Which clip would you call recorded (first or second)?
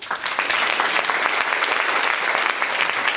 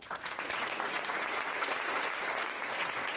first